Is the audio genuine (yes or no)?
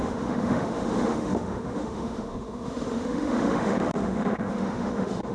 no